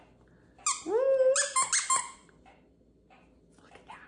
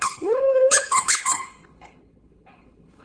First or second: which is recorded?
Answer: first